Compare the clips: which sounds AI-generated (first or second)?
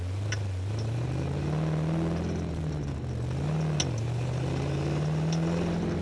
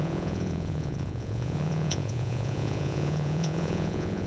second